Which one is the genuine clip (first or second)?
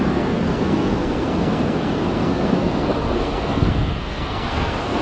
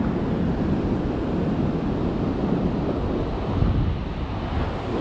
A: second